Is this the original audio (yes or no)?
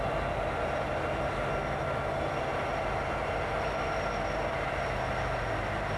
yes